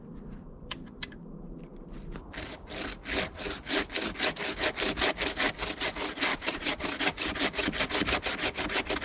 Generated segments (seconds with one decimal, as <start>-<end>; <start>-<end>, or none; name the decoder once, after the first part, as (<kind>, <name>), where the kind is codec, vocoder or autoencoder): 6.3-7.0 (vocoder, Vocos)